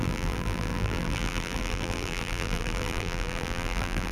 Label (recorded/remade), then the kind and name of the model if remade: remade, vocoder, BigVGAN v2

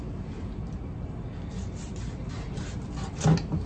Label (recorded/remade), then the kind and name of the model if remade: recorded